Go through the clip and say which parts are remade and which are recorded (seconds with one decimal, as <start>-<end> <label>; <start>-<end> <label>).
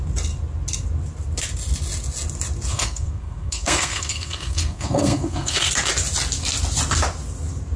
0.0-2.7 recorded; 2.7-5.7 remade; 5.7-7.8 recorded